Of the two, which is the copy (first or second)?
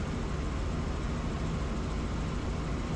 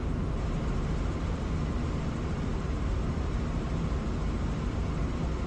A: second